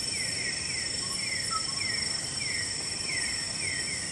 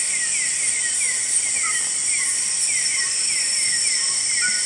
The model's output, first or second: first